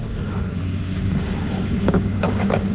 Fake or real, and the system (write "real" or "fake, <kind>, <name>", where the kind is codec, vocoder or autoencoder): fake, codec, DAC